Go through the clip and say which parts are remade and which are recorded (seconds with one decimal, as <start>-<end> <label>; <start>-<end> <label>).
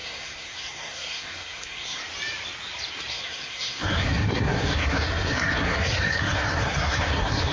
0.0-2.0 remade; 2.0-3.1 recorded; 3.1-7.5 remade